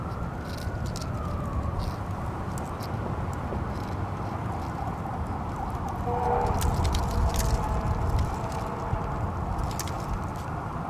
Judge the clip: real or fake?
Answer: real